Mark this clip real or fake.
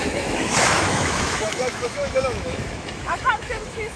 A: fake